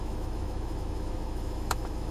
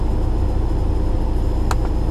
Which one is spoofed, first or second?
first